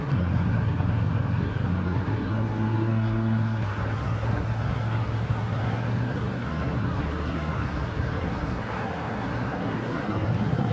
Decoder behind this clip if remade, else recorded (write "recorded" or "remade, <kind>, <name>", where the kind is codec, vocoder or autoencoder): remade, codec, SNAC